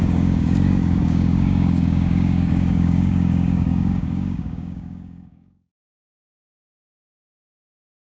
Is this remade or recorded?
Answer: remade